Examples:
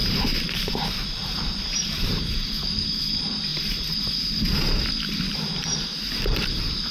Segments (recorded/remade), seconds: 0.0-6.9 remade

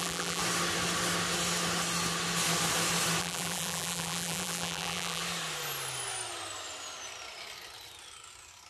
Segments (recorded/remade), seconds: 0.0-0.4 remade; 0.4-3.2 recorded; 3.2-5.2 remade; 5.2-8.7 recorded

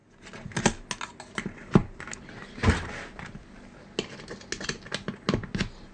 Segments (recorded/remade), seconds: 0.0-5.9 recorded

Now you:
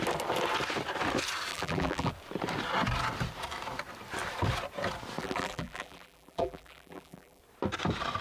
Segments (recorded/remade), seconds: 0.0-1.5 recorded; 1.5-2.1 remade; 2.1-5.2 recorded; 5.2-7.4 remade; 7.4-8.2 recorded